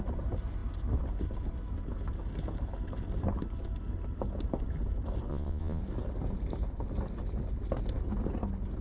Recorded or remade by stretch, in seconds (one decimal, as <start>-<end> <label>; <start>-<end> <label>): 0.0-5.3 recorded; 5.3-5.8 remade; 5.8-8.8 recorded